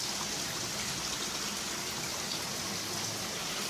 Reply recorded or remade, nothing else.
recorded